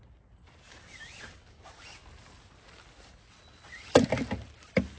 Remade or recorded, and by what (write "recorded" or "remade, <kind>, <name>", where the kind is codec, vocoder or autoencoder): recorded